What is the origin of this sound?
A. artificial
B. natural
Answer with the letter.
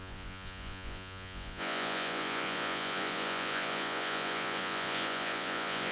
A